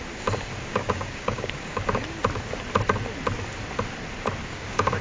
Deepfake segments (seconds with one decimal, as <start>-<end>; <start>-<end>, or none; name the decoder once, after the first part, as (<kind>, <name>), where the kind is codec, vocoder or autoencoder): 0.7-1.8 (codec, DAC); 4.4-5.0